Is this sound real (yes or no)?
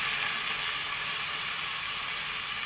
yes